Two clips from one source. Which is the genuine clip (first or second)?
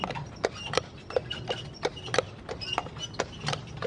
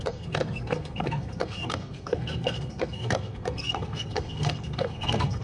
first